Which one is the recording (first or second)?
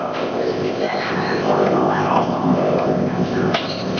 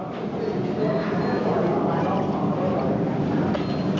second